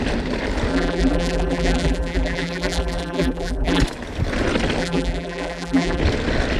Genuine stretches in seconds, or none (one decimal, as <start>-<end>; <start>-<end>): 0.0-0.7; 3.8-4.8; 6.0-6.6